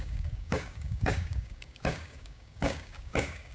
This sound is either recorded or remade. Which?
remade